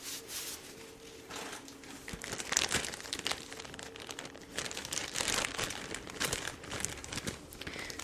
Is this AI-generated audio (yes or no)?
no